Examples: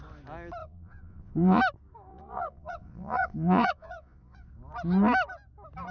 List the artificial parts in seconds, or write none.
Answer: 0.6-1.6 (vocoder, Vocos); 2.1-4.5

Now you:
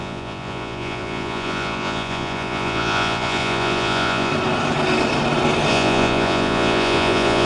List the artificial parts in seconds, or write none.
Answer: 0.0-4.3 (vocoder, Vocos); 5.7-7.5